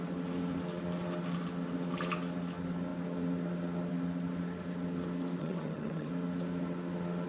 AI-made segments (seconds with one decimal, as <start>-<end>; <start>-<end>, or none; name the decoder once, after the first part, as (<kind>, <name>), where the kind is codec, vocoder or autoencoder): 5.4-6.1 (vocoder, HiFi-GAN)